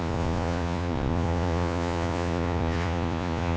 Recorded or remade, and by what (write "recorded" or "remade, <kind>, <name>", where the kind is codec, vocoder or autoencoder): remade, vocoder, Vocos